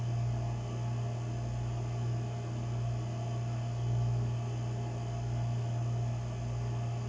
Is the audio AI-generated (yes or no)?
no